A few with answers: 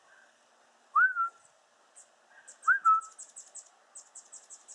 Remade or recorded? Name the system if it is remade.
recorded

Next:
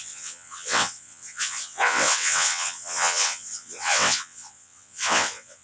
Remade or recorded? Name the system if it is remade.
remade, vocoder, WaveNeXt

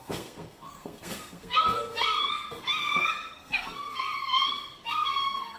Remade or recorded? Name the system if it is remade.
remade, codec, SNAC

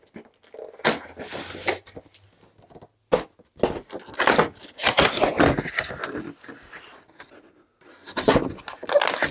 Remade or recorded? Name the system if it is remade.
recorded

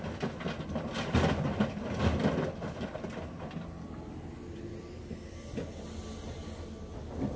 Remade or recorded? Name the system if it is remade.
recorded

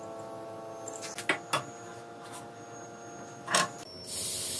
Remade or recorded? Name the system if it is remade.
recorded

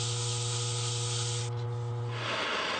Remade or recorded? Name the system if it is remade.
recorded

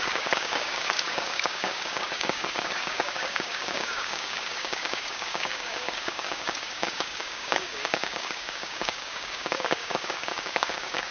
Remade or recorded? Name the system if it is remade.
remade, codec, DAC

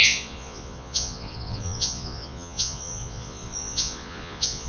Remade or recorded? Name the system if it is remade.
remade, vocoder, Vocos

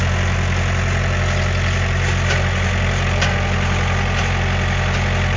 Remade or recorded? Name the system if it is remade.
recorded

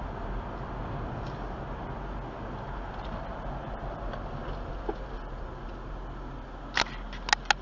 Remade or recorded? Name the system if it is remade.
recorded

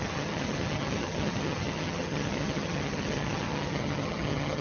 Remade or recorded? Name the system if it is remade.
remade, vocoder, HiFi-GAN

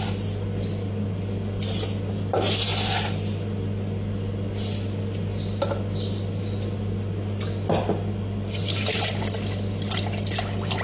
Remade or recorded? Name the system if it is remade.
recorded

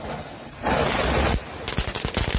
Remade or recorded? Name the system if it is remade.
recorded